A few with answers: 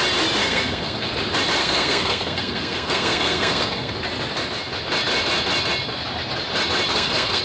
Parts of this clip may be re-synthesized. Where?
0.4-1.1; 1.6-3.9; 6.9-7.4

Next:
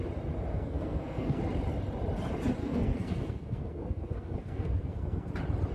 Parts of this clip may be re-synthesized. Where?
0.5-1.4; 2.6-5.3